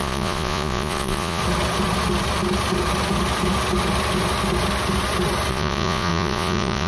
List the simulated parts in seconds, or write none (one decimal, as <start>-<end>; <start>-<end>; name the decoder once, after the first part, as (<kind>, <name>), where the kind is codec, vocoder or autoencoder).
0.0-1.4 (vocoder, Vocos); 5.5-6.9

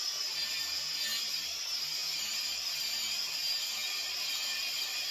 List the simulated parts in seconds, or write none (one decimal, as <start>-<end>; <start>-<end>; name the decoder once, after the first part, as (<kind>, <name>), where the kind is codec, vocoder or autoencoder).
none